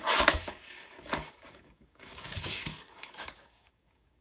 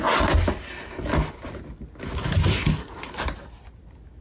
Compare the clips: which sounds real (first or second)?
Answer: second